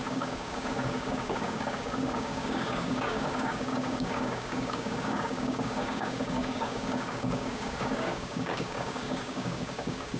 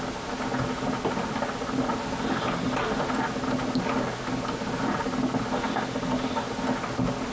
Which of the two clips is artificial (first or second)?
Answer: first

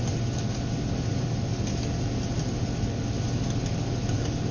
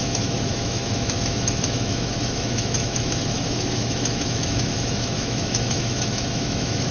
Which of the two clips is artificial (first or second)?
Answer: second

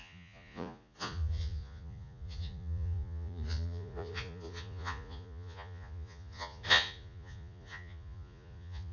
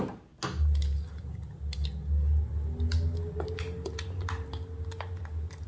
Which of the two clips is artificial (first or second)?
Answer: first